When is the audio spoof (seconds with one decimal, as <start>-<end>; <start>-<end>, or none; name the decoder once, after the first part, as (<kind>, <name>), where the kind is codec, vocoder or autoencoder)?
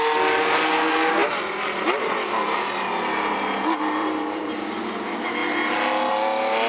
4.0-4.5 (vocoder, BigVGAN v2)